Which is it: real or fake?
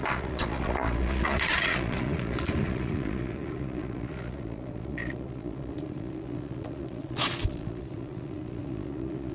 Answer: fake